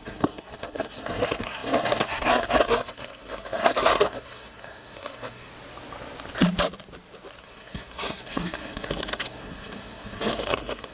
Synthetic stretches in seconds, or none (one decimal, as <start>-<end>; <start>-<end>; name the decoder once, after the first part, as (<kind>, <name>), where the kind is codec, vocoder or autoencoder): 0.0-5.5 (codec, SNAC); 7.4-10.9